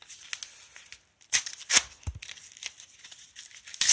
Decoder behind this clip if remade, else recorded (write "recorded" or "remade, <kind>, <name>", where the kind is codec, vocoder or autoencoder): recorded